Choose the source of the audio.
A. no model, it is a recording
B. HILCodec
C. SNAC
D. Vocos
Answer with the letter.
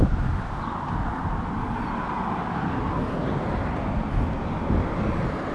A